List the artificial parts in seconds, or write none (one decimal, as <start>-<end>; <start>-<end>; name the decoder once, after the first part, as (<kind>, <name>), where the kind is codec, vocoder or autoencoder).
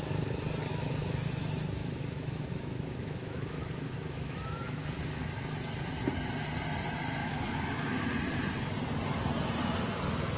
0.7-1.3 (autoencoder, DAC-VAE); 1.8-5.3; 7.2-8.1